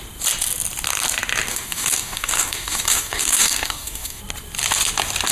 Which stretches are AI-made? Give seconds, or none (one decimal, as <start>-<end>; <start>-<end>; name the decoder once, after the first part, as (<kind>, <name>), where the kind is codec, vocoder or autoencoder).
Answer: 1.5-4.2 (codec, DAC)